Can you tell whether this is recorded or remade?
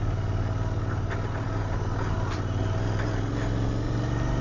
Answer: recorded